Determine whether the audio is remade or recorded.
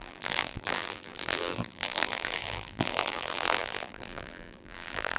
remade